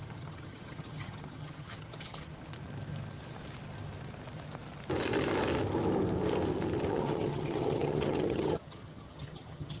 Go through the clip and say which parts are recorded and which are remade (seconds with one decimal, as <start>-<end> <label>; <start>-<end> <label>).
0.0-2.3 remade; 2.3-6.9 recorded; 6.9-9.8 remade